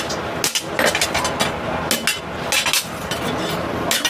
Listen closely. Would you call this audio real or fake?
real